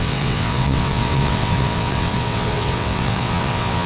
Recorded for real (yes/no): no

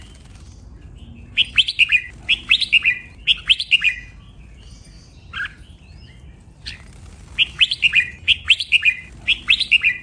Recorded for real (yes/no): yes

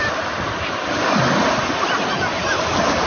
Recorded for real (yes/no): yes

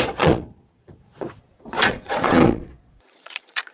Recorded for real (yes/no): no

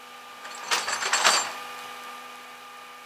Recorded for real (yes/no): yes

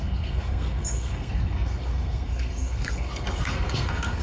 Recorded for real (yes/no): no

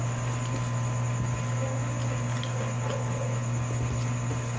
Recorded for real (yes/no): yes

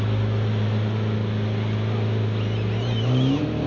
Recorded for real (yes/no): yes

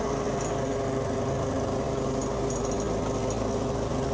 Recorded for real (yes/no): yes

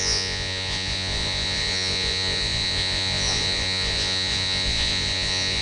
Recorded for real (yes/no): no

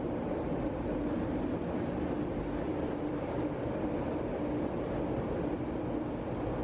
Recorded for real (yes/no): yes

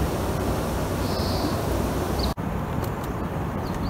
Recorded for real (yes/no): no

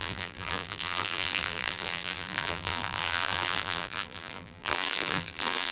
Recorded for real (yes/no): no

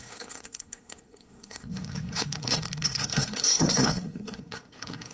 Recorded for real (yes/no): no